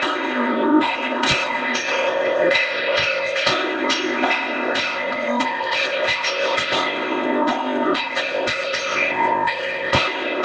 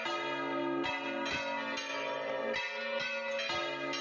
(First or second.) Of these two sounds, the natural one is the second